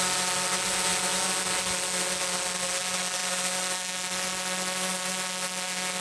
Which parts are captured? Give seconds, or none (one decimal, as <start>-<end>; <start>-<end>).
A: 0.0-6.0